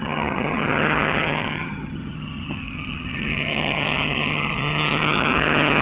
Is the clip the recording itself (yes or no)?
no